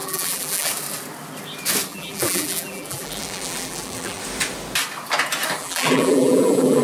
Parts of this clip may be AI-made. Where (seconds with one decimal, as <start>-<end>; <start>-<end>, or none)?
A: 0.0-0.7; 1.9-4.2; 5.6-6.8